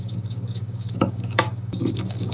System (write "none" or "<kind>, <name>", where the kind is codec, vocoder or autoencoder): codec, DAC